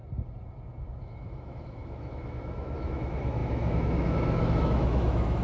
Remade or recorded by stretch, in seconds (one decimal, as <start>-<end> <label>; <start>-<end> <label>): 0.0-1.0 recorded; 1.0-5.4 remade